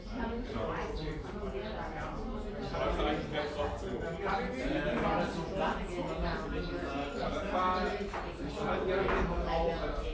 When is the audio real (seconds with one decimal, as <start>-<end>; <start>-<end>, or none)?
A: 0.0-10.1